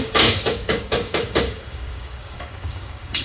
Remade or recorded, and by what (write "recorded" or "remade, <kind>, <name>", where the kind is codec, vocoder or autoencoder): remade, codec, DAC